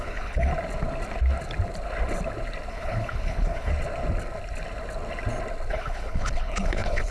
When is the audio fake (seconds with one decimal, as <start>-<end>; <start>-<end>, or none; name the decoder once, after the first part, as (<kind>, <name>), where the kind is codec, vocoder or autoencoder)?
0.0-0.5 (codec, HILCodec); 2.7-3.7; 5.7-7.1